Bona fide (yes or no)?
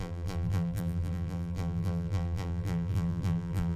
no